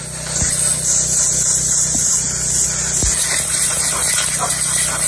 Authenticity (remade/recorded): remade